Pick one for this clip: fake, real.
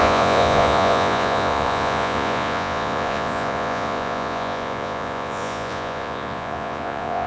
fake